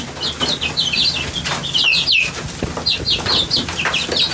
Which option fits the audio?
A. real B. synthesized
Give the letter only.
A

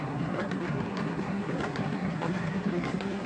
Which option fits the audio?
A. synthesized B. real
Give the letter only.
A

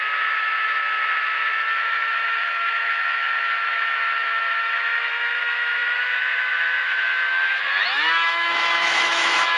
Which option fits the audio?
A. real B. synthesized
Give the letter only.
B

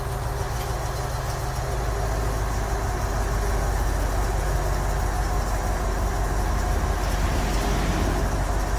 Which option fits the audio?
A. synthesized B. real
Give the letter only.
B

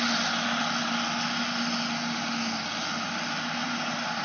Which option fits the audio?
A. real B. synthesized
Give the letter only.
A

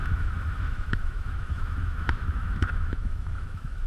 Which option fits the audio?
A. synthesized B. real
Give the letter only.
A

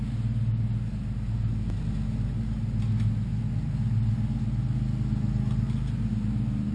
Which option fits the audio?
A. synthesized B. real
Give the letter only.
B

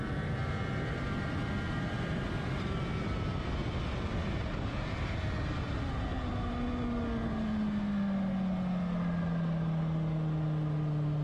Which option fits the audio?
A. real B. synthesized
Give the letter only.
A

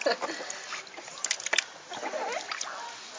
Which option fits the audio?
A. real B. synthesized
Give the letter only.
A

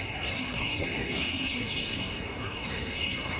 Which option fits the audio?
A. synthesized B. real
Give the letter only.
A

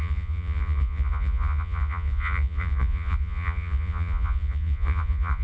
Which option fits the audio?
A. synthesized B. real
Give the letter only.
A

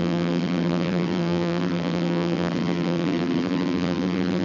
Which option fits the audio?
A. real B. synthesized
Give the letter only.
B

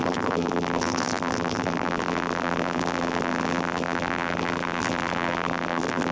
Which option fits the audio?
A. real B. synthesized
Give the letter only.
B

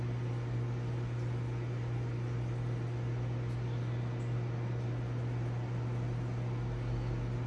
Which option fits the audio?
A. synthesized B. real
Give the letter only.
B